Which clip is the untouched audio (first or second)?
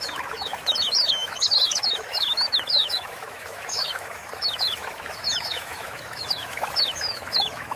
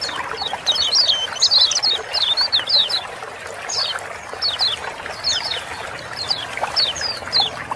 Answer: second